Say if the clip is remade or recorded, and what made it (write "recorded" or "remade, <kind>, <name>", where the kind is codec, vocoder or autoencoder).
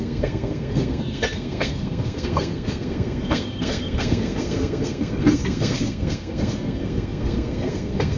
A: remade, codec, SNAC